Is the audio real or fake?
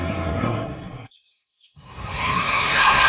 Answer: fake